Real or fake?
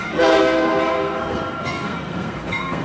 fake